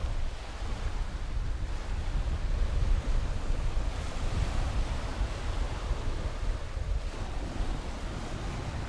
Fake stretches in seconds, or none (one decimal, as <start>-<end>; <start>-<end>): none